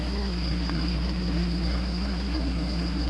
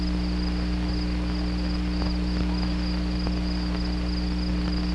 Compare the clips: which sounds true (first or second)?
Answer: second